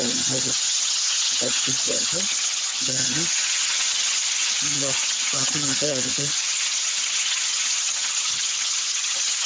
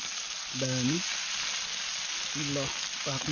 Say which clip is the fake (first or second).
first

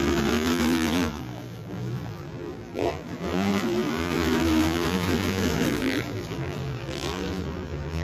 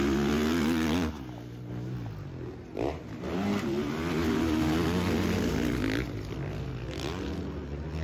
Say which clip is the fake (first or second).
first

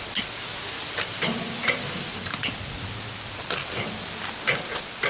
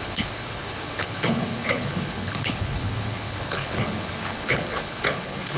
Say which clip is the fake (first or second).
second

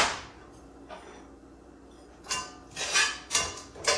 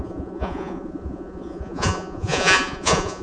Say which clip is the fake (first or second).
second